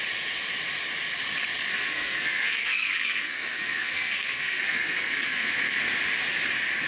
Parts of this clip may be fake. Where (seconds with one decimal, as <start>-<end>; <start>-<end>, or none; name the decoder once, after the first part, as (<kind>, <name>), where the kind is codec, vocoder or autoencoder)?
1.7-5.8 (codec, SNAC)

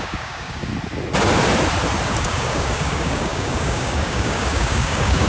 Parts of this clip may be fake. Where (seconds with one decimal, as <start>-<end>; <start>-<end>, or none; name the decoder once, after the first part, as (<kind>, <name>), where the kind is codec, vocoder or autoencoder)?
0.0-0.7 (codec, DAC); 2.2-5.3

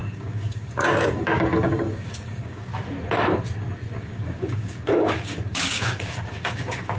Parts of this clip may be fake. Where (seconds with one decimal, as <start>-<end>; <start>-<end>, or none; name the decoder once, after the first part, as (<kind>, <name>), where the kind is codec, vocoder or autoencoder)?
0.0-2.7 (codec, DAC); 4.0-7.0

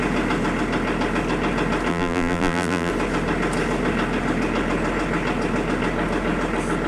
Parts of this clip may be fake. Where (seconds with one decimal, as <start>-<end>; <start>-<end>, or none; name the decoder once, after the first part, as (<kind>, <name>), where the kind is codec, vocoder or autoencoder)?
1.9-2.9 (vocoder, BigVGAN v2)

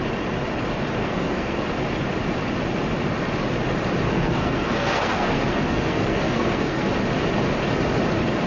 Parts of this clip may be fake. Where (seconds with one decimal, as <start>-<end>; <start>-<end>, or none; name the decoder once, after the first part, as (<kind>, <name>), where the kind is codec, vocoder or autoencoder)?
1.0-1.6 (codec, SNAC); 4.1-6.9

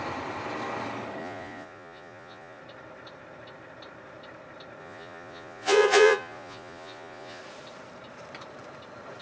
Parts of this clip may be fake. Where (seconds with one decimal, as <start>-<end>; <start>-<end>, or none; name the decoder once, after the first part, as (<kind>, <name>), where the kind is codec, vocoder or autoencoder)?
1.2-2.6 (vocoder, Vocos); 4.8-7.4

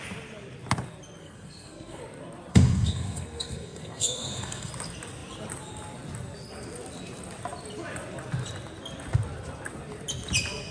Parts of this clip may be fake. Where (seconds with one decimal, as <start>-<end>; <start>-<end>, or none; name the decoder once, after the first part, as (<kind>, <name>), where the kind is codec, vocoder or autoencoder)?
1.2-2.0 (codec, SNAC); 2.5-4.7